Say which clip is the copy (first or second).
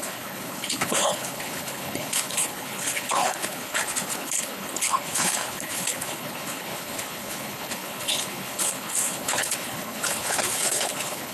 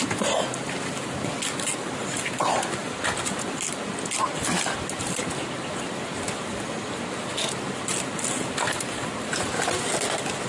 first